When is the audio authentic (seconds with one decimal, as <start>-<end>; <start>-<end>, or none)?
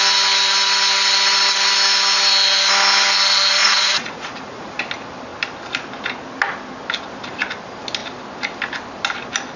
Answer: 0.0-3.6; 4.8-9.6